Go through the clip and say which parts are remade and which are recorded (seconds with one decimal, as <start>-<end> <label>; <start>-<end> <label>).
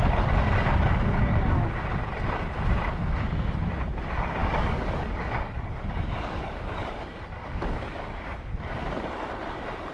0.0-4.4 recorded; 4.4-8.8 remade; 8.8-9.9 recorded